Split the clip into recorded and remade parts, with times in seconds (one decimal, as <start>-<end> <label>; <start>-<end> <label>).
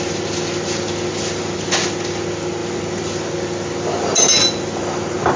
0.0-5.4 recorded